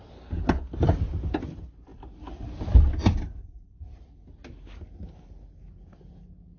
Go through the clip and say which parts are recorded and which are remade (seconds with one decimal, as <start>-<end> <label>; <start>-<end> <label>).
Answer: 0.0-6.6 recorded